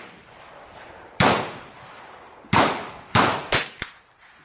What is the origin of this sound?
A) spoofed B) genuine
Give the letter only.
A